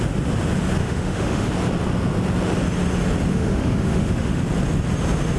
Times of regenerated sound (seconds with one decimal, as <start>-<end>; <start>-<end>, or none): 0.8-1.5; 3.3-4.4